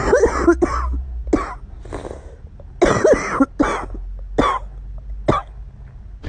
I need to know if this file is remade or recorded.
recorded